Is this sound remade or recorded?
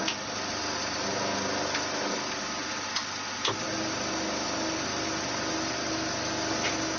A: recorded